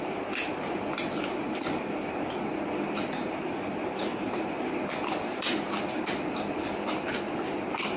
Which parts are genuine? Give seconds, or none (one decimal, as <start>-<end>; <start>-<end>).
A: 0.0-3.8; 4.7-8.0